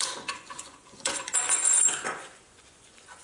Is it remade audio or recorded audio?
remade